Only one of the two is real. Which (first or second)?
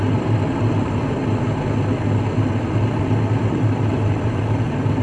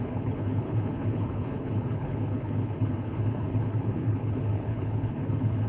first